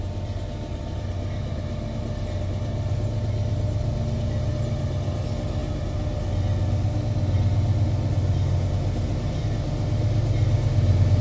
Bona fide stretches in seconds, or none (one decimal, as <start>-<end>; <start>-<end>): 0.0-11.2